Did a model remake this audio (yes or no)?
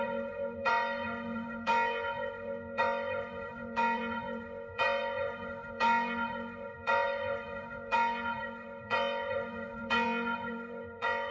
yes